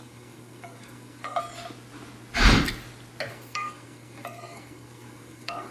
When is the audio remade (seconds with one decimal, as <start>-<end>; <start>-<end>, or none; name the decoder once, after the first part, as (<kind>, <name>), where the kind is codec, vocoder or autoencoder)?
0.0-1.4 (codec, SNAC); 3.3-5.7